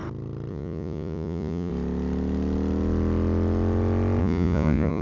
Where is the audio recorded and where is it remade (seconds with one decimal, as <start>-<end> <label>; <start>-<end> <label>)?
0.0-0.5 recorded; 0.5-1.7 remade; 1.7-4.2 recorded; 4.2-5.0 remade